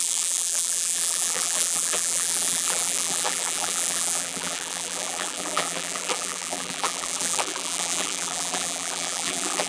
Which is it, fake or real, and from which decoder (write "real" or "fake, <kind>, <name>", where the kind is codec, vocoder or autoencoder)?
fake, vocoder, BigVGAN v2